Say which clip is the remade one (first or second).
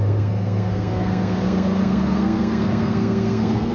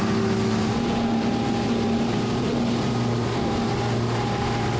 first